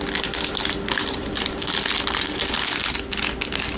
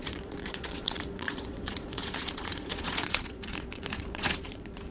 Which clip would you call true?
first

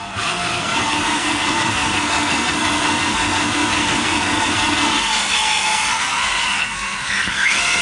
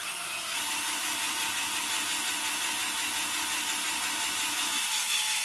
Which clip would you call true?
second